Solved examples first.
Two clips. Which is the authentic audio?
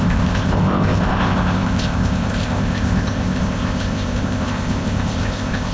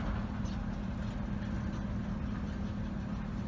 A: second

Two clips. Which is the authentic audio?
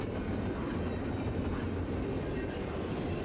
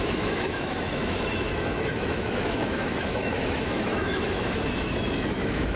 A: first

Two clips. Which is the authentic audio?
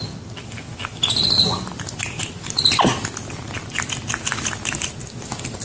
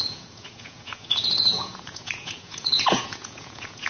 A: first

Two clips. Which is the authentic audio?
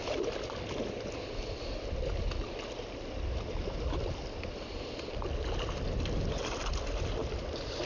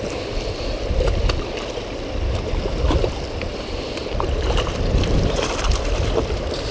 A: first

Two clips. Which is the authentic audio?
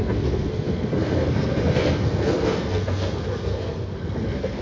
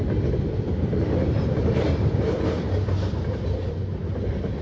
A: second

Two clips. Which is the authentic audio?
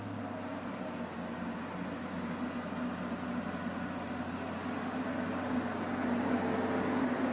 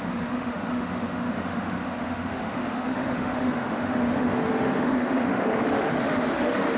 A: first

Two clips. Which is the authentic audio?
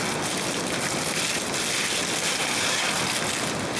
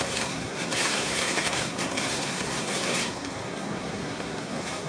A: first